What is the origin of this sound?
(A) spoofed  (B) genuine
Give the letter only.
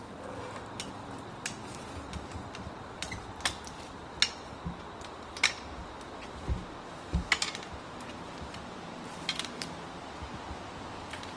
B